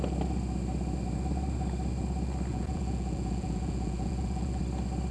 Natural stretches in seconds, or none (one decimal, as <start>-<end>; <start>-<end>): 0.0-2.5; 4.6-5.1